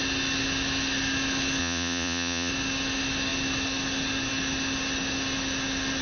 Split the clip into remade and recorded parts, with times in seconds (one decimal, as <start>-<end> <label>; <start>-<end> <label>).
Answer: 0.0-1.6 recorded; 1.6-2.5 remade; 2.5-6.0 recorded